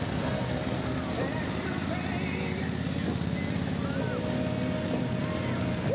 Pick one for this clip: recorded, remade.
recorded